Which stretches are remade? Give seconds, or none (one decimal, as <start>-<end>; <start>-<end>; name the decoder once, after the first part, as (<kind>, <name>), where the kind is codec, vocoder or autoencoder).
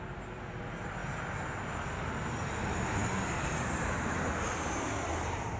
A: none